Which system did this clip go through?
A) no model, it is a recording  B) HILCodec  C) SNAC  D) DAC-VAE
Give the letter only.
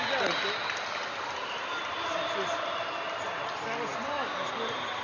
A